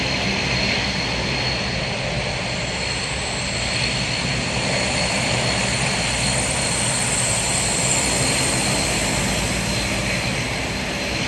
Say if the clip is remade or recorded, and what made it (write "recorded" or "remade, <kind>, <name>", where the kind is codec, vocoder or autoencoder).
recorded